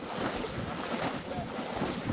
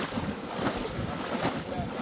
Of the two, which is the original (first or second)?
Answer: second